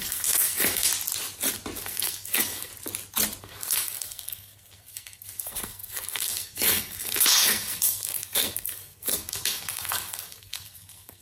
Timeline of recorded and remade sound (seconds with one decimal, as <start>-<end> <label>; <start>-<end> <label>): 0.0-0.9 remade; 0.9-1.8 recorded; 1.8-2.7 remade; 2.7-3.4 recorded; 3.4-11.2 remade